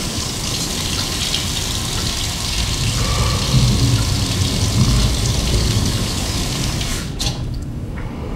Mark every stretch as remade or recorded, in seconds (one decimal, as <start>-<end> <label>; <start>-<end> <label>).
0.0-0.7 remade; 0.7-5.5 recorded; 5.5-8.4 remade